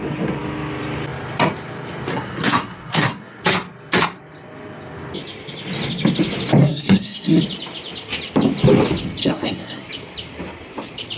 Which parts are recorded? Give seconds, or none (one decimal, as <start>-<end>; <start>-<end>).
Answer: 0.0-2.1; 3.4-6.6; 7.4-9.2; 9.9-11.2